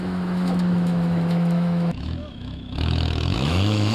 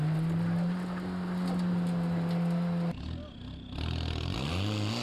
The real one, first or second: second